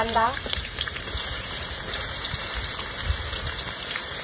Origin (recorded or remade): remade